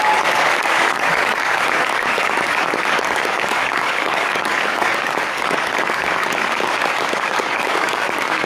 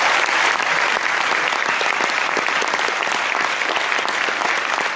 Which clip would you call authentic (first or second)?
second